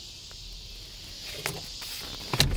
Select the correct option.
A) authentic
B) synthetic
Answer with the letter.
A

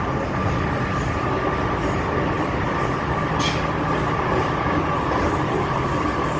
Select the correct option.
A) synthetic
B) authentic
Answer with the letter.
B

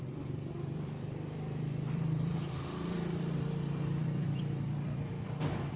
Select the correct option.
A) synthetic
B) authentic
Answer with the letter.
A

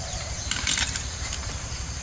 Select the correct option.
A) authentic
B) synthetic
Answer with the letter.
B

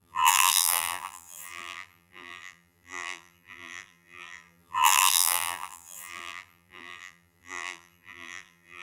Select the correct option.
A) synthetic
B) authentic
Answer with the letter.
A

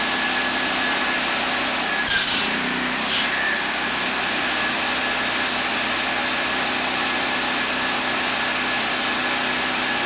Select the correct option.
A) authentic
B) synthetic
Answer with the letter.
A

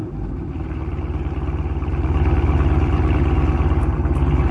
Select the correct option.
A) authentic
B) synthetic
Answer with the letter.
B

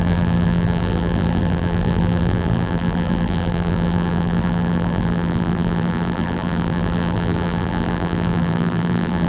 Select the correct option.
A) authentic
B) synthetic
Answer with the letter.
B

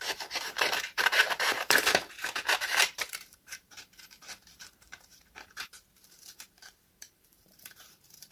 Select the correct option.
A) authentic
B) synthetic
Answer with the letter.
B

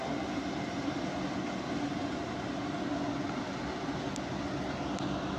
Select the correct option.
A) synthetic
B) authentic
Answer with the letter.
B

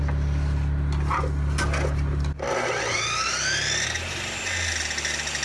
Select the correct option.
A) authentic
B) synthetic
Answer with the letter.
A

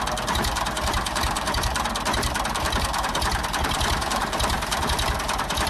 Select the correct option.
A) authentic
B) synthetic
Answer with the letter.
B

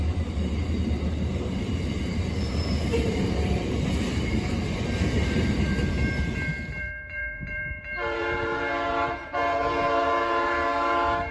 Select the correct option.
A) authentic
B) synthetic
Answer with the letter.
B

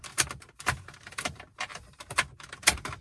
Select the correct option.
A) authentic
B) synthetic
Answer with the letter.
B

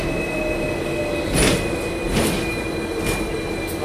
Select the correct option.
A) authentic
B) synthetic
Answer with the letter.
A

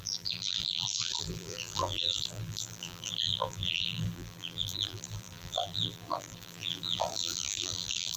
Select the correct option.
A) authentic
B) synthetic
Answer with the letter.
B